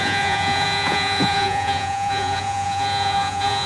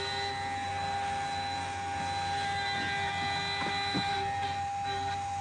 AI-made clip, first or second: first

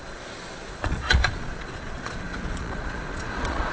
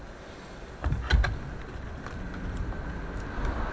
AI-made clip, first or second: first